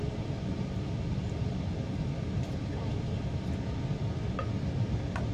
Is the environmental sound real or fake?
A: real